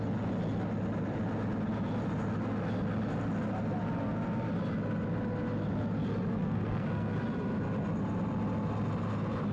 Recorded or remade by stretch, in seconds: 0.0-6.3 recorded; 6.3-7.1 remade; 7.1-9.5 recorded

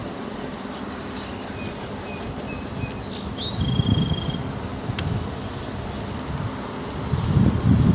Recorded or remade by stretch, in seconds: 0.0-7.9 recorded

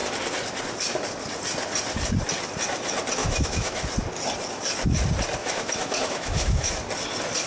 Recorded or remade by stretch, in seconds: 0.0-3.2 recorded; 3.2-3.8 remade; 3.8-5.4 recorded; 5.4-6.7 remade; 6.7-7.5 recorded

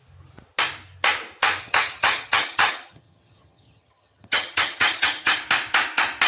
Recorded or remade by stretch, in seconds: 0.0-1.6 recorded; 1.6-5.4 remade; 5.4-6.3 recorded

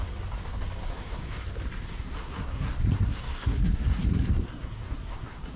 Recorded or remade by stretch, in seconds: 0.0-0.9 recorded; 0.9-1.4 remade; 1.4-1.9 recorded; 1.9-5.6 remade

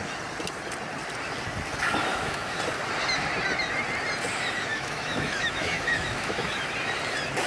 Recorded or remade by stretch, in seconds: 0.0-2.1 recorded; 2.1-2.6 remade; 2.6-4.7 recorded; 4.7-6.7 remade; 6.7-7.5 recorded